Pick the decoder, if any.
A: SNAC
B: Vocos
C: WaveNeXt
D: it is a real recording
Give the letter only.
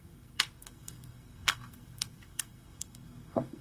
A